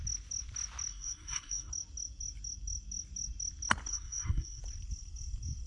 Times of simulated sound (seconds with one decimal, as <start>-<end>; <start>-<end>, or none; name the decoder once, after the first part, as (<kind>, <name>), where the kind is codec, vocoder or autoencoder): 0.9-1.7 (codec, SNAC); 3.9-4.6